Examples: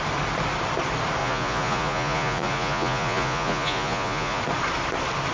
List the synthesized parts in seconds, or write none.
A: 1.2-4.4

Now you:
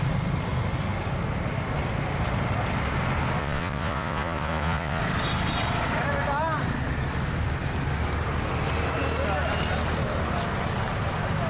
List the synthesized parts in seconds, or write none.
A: 3.4-5.0

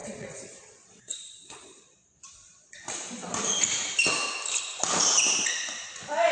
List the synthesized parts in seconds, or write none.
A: 0.0-2.8

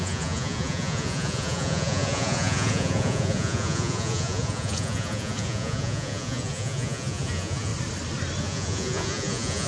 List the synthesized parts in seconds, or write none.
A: 0.0-7.7; 8.4-9.7

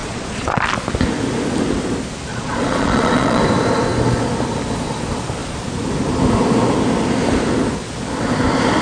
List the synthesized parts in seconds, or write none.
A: 0.0-0.6; 2.3-3.4